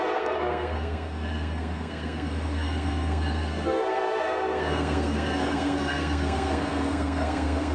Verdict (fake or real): fake